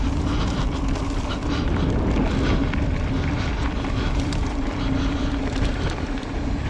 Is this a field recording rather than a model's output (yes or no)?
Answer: yes